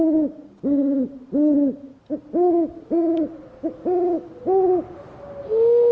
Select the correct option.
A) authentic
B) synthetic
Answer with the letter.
A